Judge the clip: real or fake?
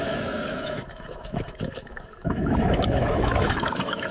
fake